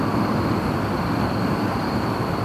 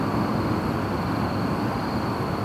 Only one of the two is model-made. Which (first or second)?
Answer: first